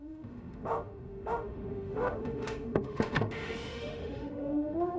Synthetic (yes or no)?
yes